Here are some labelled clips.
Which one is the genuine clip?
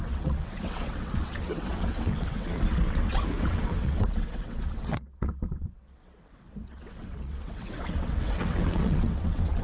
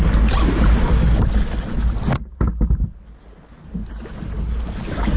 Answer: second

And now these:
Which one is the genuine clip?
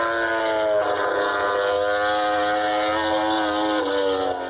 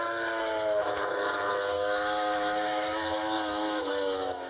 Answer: first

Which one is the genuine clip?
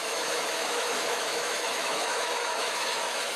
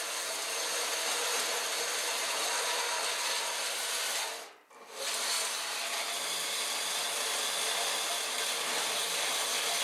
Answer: second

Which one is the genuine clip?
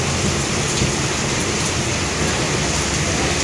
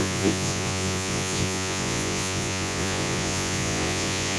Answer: first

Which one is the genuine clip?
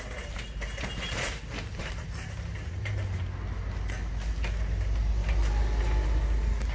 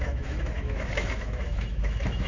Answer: first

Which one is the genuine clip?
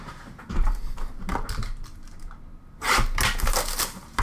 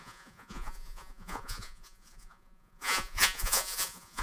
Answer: first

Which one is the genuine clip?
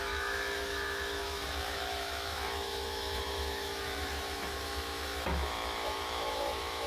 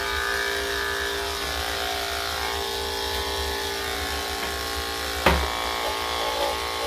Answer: second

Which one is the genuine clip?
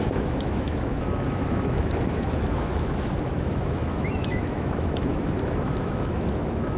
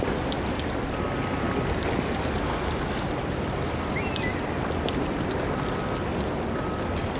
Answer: second